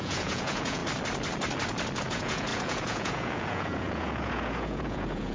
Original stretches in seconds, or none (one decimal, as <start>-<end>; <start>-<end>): 0.8-2.0